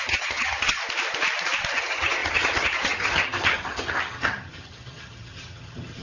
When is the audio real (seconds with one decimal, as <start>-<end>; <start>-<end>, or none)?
0.8-1.7